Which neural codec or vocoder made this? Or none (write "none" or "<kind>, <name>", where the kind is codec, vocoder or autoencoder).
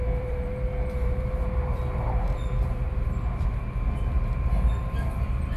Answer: vocoder, BigVGAN v2